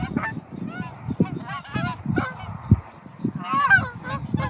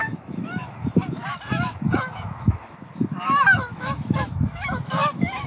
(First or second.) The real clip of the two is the first